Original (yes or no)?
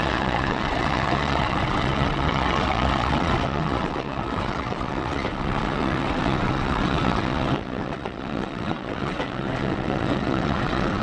no